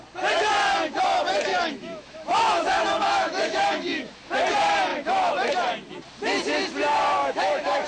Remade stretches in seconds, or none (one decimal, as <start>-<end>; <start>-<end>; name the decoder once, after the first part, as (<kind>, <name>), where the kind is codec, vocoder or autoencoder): 1.5-4.3 (autoencoder, DAC-VAE); 4.9-5.5; 7.2-7.9